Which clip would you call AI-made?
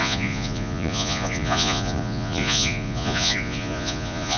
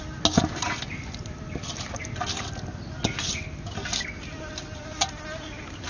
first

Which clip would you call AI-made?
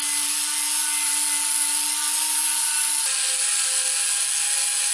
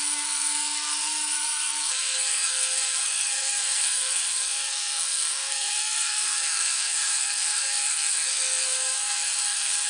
second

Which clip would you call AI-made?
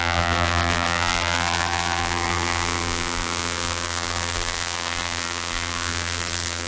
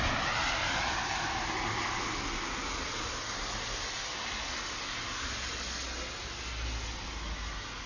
first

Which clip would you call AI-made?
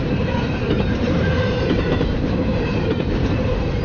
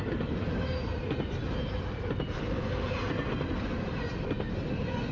first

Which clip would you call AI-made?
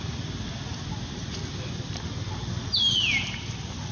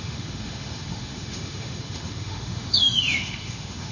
second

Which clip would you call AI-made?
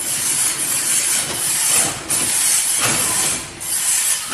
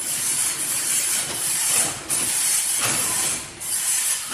second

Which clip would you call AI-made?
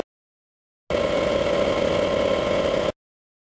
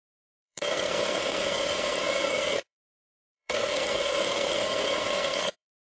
second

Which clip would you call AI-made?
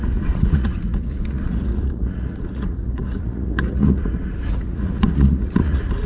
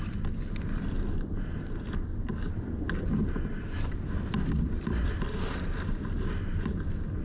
first